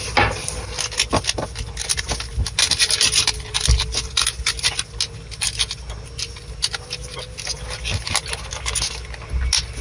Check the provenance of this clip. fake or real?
real